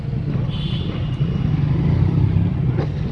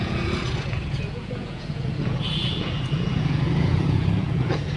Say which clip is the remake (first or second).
second